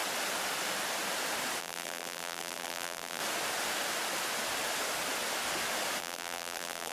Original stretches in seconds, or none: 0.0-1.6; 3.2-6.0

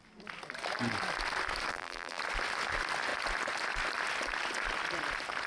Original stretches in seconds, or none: 0.0-1.7; 2.2-5.5

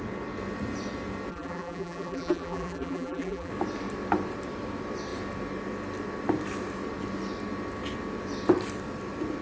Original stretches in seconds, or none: 0.0-1.3; 3.5-9.4